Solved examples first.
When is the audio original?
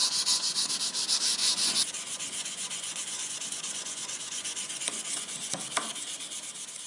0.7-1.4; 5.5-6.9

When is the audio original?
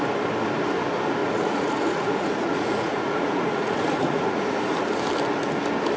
0.0-1.2; 4.8-6.0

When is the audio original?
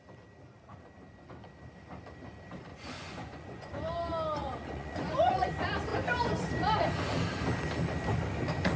0.0-2.7; 3.7-4.4; 5.5-8.8